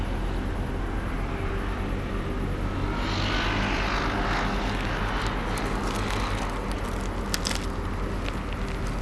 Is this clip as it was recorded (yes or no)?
yes